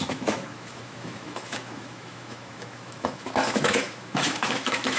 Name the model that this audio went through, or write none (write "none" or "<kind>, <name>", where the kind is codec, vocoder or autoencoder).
autoencoder, DAC-VAE